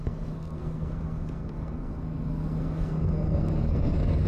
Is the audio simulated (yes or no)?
yes